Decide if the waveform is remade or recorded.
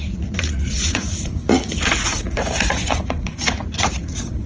remade